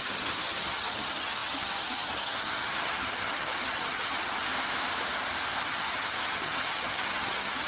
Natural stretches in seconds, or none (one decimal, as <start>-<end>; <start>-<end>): 4.5-5.6